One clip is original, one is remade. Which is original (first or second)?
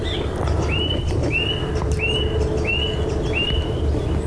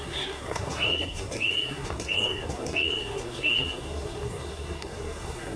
first